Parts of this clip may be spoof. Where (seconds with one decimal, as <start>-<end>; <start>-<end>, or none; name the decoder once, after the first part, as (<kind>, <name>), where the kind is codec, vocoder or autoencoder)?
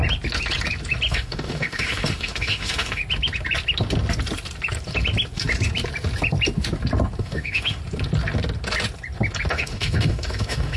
1.1-3.0 (autoencoder, DAC-VAE); 7.2-7.8; 9.5-10.8